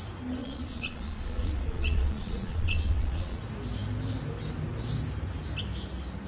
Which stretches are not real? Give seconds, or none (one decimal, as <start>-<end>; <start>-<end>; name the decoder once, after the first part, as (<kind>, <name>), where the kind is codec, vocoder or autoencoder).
0.4-3.4 (vocoder, Vocos)